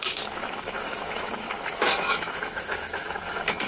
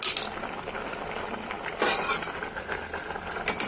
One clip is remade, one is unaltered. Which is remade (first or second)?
first